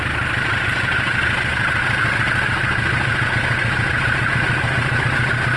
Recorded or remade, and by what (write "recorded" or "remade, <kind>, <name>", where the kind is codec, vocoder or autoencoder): recorded